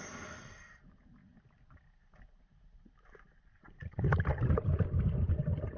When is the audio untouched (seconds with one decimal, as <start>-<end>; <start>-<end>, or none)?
0.0-3.4; 4.0-5.8